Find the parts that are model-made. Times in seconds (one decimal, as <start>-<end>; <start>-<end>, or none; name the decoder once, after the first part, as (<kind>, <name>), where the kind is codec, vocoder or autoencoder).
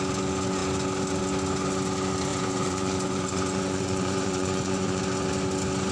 2.3-5.0 (vocoder, Vocos)